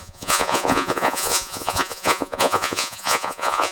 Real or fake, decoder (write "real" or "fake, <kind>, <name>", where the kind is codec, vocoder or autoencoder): fake, vocoder, Vocos